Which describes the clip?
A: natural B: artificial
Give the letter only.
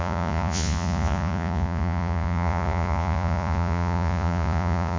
B